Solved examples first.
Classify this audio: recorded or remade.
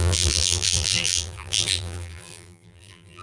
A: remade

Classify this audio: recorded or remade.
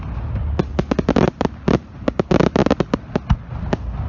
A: recorded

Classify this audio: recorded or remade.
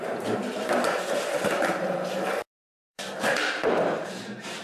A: remade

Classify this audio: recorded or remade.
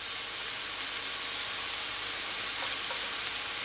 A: recorded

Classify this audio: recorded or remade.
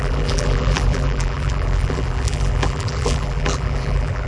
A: remade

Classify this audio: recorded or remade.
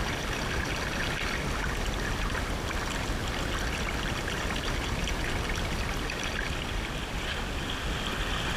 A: recorded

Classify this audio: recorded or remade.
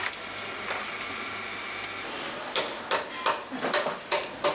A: recorded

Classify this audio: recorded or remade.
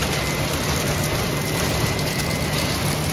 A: remade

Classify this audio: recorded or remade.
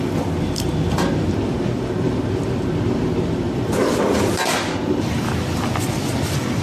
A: remade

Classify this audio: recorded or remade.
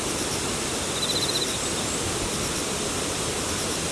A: remade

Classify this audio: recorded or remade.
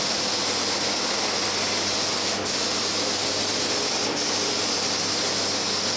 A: recorded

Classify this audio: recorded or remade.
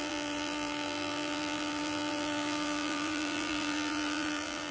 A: remade